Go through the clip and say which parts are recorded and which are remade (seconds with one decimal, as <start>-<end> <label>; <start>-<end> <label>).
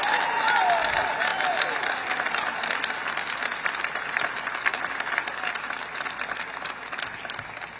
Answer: 0.0-7.8 recorded